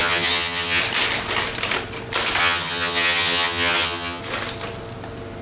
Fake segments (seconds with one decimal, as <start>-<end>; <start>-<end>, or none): 0.0-0.8; 2.4-4.2